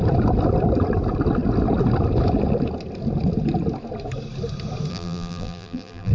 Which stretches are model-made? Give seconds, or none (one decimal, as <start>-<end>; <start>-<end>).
4.9-6.1